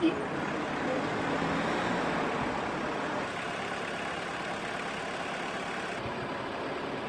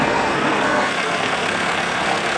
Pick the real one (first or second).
first